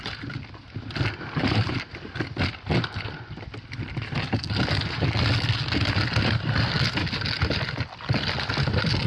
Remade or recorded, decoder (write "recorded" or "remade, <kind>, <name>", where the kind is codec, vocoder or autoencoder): recorded